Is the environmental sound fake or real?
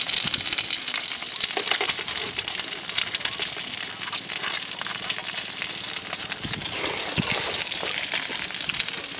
real